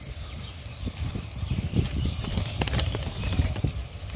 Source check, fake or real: fake